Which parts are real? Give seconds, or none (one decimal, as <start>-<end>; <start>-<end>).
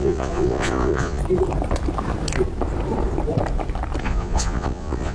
1.2-4.0